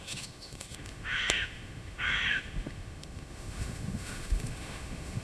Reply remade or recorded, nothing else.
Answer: remade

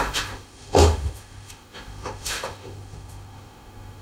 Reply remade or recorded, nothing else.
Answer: remade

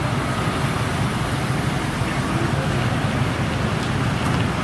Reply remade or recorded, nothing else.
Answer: recorded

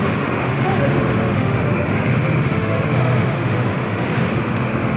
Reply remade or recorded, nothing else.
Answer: remade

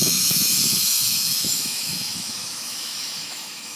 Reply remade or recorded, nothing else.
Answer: remade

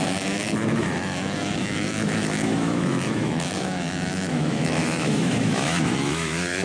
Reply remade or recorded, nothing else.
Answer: remade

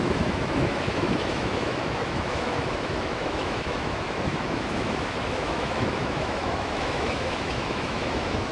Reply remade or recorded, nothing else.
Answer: remade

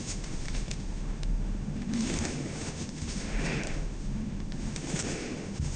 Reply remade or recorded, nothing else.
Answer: remade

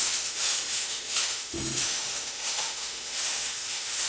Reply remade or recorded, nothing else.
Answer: remade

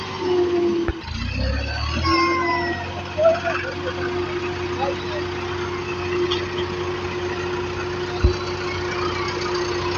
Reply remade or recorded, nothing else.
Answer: recorded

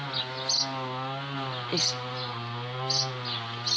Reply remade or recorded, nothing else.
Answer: recorded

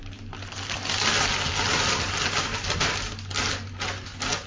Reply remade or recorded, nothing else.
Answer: recorded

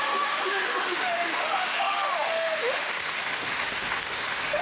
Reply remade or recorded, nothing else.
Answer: remade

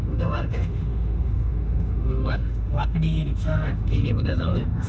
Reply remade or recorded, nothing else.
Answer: remade